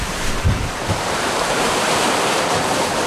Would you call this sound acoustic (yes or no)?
no